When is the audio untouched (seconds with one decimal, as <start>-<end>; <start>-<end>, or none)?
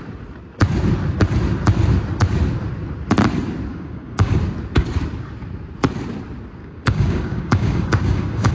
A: 0.0-3.7; 4.3-6.6